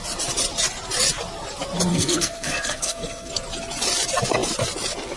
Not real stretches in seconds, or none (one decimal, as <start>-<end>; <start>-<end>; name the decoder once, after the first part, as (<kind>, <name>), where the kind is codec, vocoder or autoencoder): 1.9-3.3 (codec, SNAC)